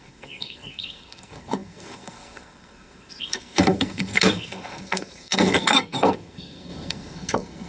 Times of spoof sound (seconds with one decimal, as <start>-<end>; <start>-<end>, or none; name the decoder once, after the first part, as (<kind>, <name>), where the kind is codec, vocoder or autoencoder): 0.0-7.7 (codec, SNAC)